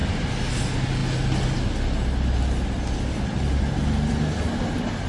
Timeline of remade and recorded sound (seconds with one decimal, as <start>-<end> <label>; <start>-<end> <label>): 0.0-5.1 recorded